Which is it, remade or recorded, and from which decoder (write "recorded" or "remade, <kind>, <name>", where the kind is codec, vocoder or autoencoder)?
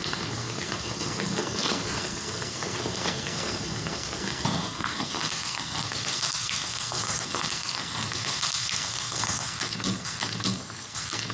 remade, codec, SNAC